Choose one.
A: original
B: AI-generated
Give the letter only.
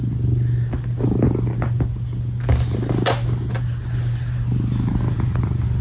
A